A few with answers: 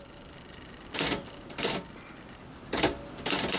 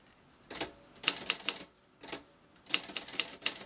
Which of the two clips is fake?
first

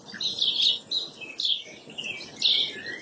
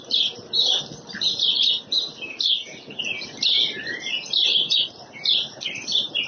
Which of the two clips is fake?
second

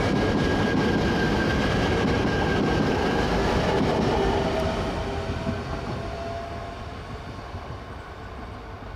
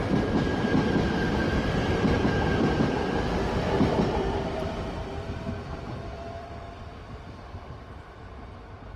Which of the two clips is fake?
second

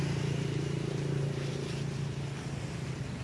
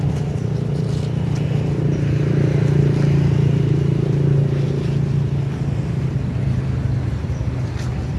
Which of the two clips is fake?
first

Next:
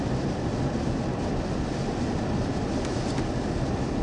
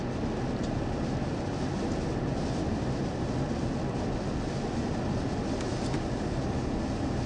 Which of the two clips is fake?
first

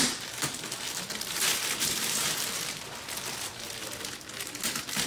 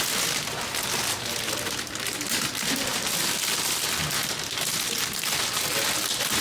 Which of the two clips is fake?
first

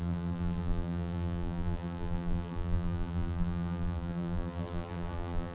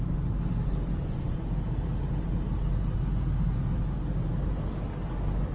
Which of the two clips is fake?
first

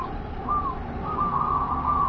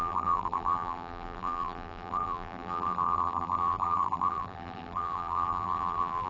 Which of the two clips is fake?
second